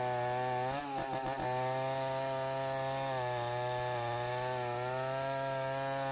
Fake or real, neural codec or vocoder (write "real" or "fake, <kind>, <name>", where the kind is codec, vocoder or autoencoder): real